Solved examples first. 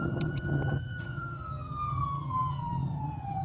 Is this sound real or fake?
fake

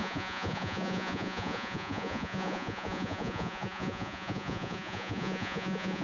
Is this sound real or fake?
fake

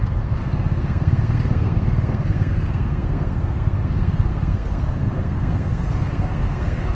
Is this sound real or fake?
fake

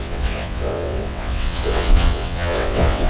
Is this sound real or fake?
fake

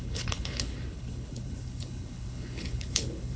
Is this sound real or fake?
fake